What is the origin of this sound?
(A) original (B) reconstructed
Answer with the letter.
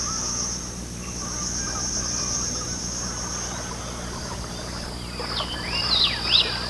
A